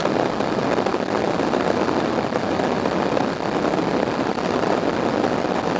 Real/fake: real